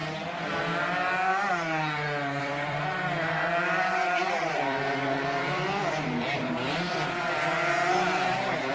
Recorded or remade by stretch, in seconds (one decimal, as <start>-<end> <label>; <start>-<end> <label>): 0.0-2.4 recorded; 2.4-8.7 remade